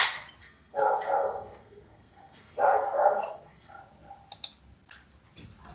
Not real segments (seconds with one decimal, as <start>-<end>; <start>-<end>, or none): 0.4-3.8